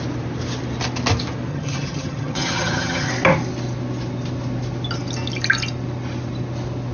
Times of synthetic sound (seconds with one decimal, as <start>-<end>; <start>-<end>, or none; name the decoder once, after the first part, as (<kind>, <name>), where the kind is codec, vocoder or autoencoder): 1.5-3.1 (vocoder, HiFi-GAN)